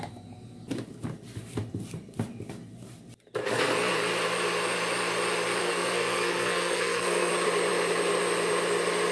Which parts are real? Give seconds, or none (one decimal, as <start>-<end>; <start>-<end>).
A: 0.0-5.6; 7.3-9.1